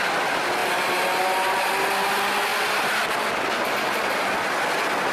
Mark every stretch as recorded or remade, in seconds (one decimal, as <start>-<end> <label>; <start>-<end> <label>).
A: 0.0-5.1 recorded